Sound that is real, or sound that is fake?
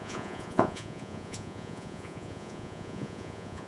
fake